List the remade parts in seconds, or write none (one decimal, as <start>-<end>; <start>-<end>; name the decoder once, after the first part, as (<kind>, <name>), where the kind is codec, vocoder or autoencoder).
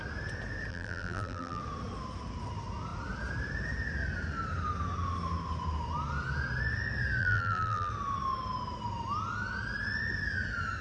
0.7-1.6 (vocoder, BigVGAN v2); 7.2-7.9